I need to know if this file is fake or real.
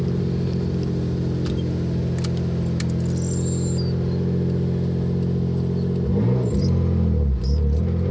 real